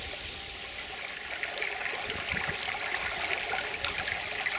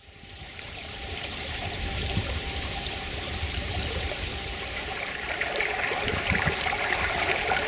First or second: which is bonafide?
first